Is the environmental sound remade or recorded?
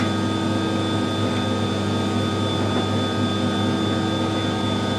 recorded